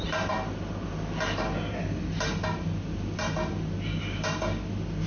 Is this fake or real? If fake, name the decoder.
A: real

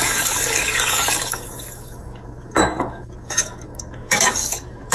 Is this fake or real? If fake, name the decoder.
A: fake, codec, DAC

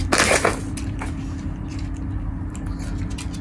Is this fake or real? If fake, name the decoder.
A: real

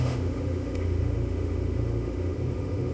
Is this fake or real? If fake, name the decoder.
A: fake, autoencoder, DAC-VAE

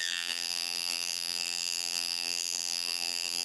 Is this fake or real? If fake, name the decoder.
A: fake, vocoder, BigVGAN v2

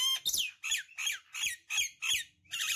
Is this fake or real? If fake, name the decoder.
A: real